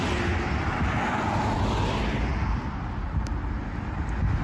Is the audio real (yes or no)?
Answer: yes